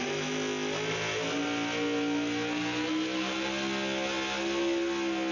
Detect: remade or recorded recorded